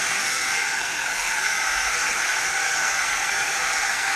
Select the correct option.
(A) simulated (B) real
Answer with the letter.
A